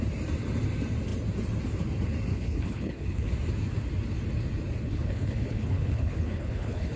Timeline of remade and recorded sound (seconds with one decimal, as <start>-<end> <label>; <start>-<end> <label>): 0.0-2.3 recorded; 2.3-3.3 remade; 3.3-4.8 recorded; 4.8-7.0 remade